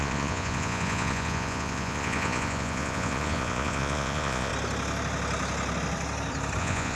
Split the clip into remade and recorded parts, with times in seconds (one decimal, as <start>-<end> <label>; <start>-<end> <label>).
0.0-4.5 remade; 4.5-6.6 recorded; 6.6-7.0 remade